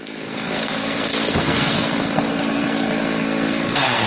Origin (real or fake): fake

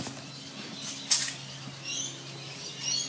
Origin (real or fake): real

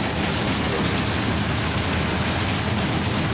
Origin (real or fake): real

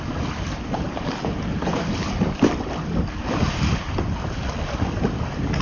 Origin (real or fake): real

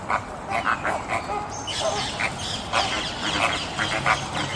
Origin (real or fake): real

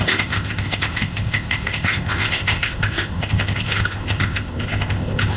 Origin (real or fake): fake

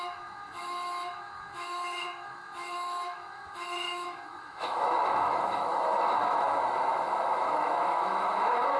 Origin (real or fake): fake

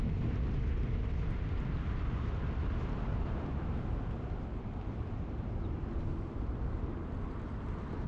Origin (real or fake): real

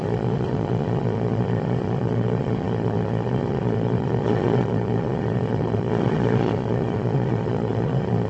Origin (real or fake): fake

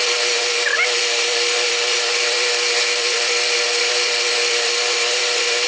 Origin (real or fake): fake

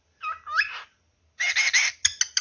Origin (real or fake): real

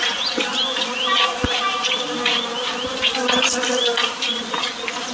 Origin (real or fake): real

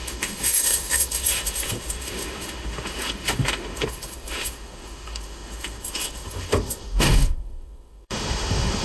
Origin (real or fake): fake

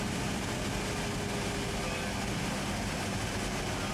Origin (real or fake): real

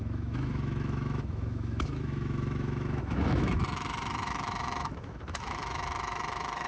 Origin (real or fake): fake